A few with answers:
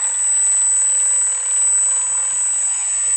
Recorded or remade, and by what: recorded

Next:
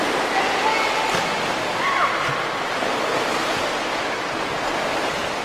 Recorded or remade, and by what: recorded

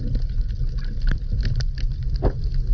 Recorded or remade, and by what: recorded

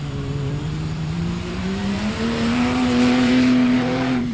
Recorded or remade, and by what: remade, vocoder, BigVGAN v2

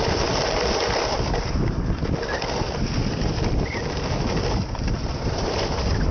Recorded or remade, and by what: recorded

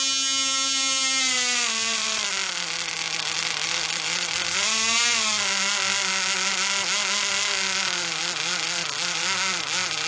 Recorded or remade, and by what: recorded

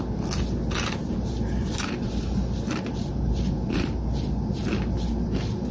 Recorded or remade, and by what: recorded